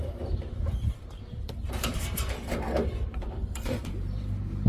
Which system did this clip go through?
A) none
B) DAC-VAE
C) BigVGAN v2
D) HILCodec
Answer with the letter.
C